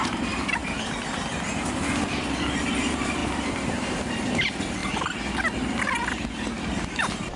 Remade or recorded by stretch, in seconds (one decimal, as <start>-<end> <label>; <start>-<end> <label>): 0.0-0.6 remade; 0.6-2.0 recorded; 2.0-4.8 remade; 4.8-5.8 recorded; 5.8-7.4 remade